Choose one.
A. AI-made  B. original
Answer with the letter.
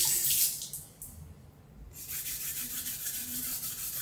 B